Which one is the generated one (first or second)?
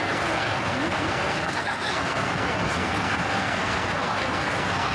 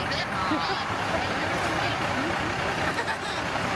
first